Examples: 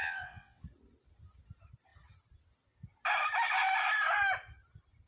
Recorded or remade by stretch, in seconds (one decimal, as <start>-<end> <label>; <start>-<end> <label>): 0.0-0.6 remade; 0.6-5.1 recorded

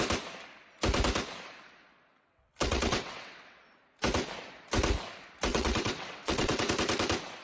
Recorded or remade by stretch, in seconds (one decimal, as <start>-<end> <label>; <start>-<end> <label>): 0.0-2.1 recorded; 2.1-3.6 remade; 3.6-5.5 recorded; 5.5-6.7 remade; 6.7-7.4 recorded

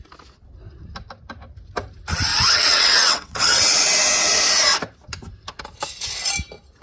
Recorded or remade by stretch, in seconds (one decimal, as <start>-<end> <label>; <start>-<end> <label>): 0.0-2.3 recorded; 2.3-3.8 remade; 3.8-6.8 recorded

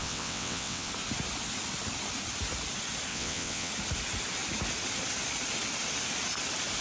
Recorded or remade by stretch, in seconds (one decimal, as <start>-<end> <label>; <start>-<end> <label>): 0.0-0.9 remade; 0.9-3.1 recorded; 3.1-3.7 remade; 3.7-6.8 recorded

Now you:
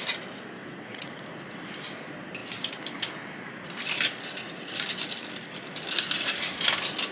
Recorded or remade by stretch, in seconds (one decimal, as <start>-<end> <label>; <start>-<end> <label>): 0.0-0.6 recorded; 0.6-1.2 remade; 1.2-7.1 recorded

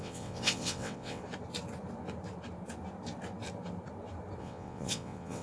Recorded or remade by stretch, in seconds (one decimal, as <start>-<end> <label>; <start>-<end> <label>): 0.0-1.2 remade; 1.2-4.4 recorded; 4.4-5.4 remade

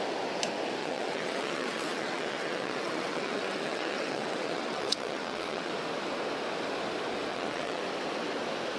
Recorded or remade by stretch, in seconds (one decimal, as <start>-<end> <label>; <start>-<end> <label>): 0.0-0.8 recorded; 0.8-5.7 remade; 5.7-7.3 recorded; 7.3-7.8 remade; 7.8-8.8 recorded